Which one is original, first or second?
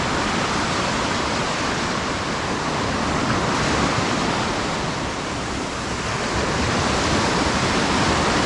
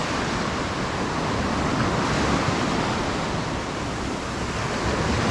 second